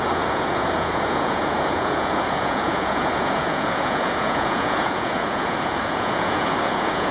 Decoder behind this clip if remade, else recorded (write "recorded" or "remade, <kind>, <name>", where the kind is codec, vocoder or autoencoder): remade, vocoder, Vocos